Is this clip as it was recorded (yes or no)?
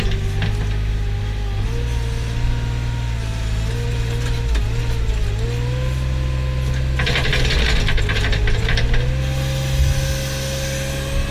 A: yes